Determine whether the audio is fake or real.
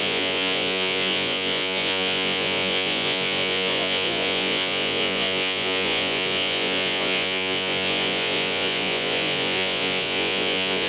fake